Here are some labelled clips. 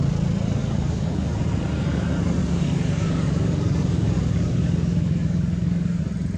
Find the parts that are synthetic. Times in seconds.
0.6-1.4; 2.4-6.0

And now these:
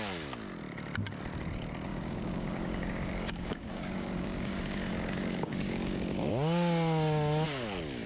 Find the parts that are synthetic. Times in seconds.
1.9-6.3

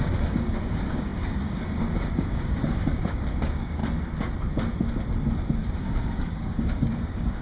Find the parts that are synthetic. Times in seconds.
0.0-3.8; 5.8-7.4